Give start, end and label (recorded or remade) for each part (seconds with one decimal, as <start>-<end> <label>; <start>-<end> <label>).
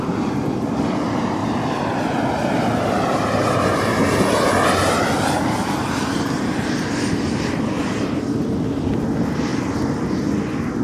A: 0.0-1.4 recorded; 1.4-5.9 remade; 5.9-9.5 recorded; 9.5-10.0 remade; 10.0-10.8 recorded